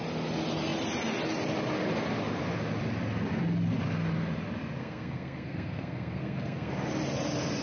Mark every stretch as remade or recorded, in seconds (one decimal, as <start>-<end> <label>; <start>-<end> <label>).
0.0-4.8 recorded; 4.8-6.7 remade; 6.7-7.6 recorded